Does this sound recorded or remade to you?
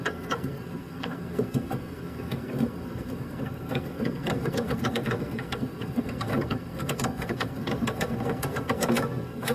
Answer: remade